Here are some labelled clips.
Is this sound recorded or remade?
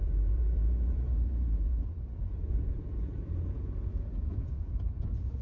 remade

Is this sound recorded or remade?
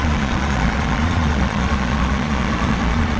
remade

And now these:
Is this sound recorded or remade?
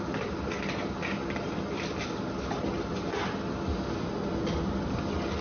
recorded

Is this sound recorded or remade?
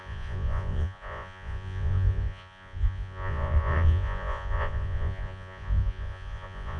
remade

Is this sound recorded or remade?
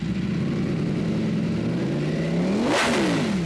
recorded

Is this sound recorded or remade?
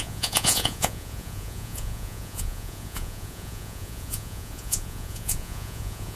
remade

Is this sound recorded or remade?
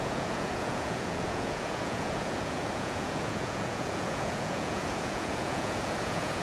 remade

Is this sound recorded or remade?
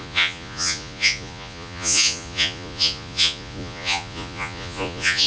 remade